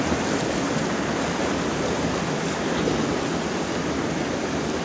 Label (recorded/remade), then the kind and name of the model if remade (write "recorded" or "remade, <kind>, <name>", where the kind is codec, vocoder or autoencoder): recorded